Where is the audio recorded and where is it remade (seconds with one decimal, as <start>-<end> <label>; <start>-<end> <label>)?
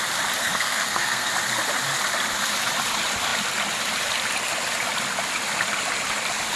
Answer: 0.0-0.4 recorded; 0.4-1.3 remade; 1.3-6.6 recorded